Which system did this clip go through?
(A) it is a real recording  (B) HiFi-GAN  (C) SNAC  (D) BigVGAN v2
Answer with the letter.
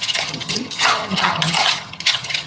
B